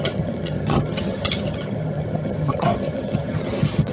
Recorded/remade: remade